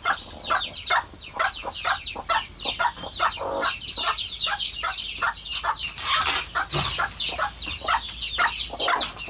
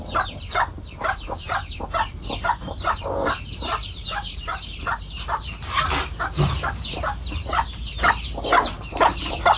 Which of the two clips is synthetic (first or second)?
second